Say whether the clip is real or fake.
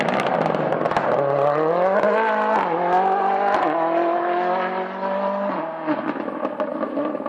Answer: real